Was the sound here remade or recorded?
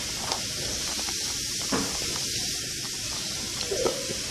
remade